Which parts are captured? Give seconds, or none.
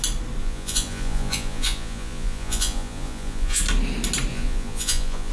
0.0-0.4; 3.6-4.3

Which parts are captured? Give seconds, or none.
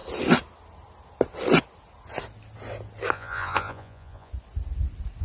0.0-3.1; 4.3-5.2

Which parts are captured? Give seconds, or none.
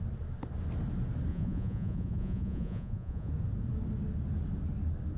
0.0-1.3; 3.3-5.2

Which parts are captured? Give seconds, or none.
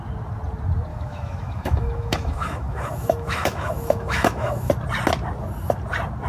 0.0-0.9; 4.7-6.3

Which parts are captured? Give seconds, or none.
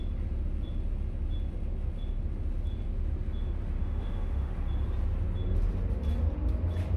0.0-3.8; 4.5-7.0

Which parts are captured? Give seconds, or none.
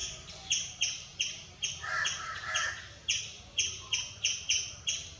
0.5-3.3; 4.2-5.2